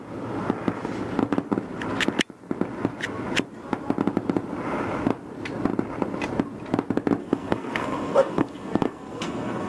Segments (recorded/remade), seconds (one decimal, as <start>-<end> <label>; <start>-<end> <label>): 0.0-7.2 recorded; 7.2-9.7 remade